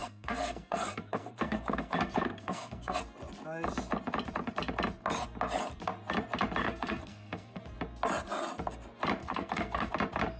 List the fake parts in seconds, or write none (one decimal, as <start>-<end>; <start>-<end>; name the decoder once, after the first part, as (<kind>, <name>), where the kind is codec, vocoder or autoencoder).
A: 0.0-3.0 (codec, SNAC); 6.6-7.6; 9.2-9.9

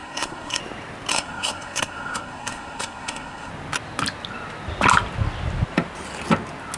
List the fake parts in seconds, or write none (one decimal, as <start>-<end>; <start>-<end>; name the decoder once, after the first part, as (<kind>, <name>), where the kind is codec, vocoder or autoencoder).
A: 0.0-0.6 (codec, SNAC); 1.1-3.5

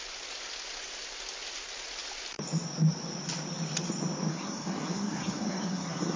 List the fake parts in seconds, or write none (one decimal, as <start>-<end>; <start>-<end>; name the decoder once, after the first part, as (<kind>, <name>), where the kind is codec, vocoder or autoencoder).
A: 4.3-6.2 (codec, SNAC)

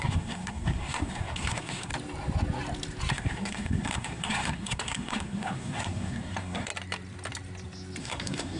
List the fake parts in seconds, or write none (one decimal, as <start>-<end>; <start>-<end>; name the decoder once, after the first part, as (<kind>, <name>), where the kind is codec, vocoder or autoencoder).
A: 0.0-1.9 (codec, SNAC); 3.1-6.7; 8.0-8.6

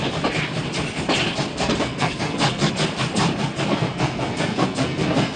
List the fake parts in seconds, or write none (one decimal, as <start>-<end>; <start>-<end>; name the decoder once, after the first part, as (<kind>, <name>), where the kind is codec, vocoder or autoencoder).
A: 1.5-2.7 (codec, SNAC); 3.7-5.4

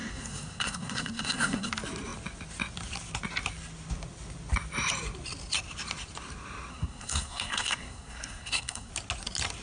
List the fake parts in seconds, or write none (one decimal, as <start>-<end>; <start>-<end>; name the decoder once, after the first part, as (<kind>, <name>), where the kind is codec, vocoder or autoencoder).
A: 0.0-1.7 (codec, SNAC); 6.7-8.9